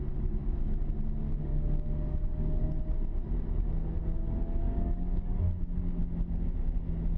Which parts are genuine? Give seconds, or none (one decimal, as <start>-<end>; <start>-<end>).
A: 0.0-1.5; 2.8-4.6; 6.0-7.2